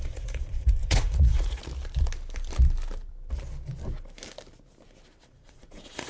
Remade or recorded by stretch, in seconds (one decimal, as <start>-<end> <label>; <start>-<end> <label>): 0.0-1.6 remade; 1.6-5.3 recorded; 5.3-6.1 remade